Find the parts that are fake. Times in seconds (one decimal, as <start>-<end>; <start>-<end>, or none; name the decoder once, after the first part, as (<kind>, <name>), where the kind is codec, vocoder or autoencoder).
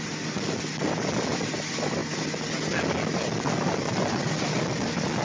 none